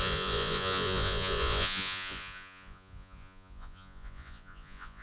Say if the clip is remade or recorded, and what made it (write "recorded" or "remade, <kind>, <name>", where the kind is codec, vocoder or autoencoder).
remade, vocoder, Vocos